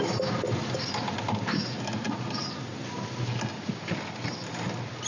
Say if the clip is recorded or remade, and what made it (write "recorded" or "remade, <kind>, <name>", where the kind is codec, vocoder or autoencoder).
recorded